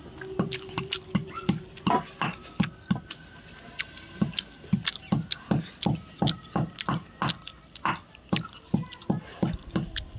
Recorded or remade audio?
recorded